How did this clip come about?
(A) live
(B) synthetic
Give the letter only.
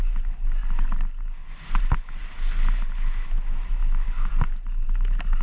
A